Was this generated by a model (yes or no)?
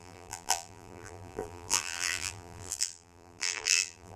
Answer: yes